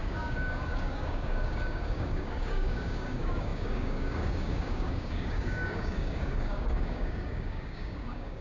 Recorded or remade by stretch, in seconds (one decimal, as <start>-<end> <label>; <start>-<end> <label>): 0.0-8.4 remade

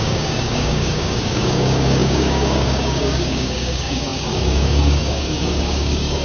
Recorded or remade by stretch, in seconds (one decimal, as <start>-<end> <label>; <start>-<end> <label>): 0.0-6.2 remade

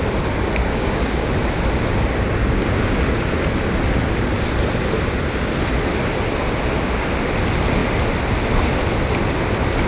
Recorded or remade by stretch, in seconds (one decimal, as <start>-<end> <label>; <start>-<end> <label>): 0.0-0.6 recorded; 0.6-1.3 remade; 1.3-2.4 recorded; 2.4-3.0 remade; 3.0-9.9 recorded

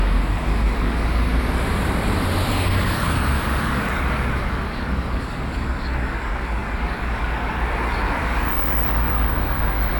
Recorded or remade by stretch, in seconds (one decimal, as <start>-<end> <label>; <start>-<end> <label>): 0.0-1.3 remade; 1.3-2.5 recorded; 2.5-10.0 remade

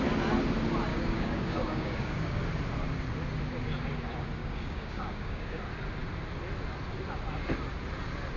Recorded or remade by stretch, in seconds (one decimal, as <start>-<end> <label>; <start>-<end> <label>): 0.0-0.9 recorded; 0.9-2.4 remade; 2.4-4.4 recorded; 4.4-5.6 remade; 5.6-8.4 recorded